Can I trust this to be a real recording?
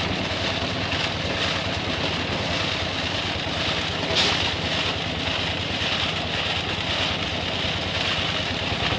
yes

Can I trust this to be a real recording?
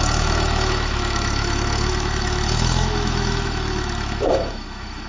no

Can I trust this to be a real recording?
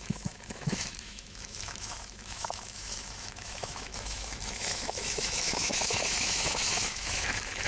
no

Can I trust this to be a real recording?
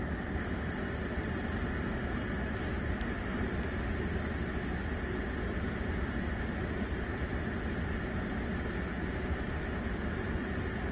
yes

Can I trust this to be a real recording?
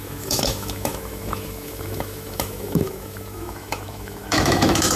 no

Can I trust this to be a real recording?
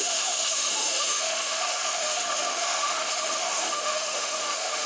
no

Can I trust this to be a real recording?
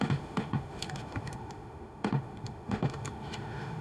no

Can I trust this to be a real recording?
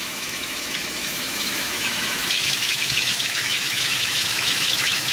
no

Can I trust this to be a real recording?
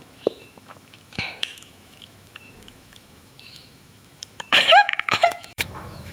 no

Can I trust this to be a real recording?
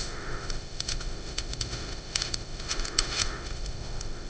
no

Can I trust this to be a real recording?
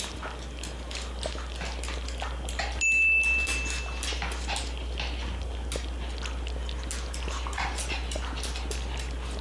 yes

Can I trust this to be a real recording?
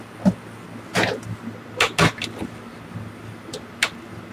yes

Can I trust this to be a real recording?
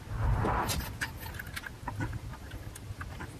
yes